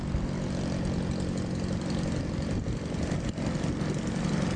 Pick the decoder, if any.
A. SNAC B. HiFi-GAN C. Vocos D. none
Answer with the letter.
D